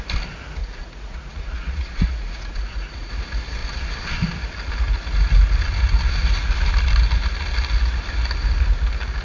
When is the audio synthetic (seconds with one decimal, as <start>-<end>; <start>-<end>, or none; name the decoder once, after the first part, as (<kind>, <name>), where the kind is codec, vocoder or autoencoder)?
0.6-3.1 (vocoder, Vocos)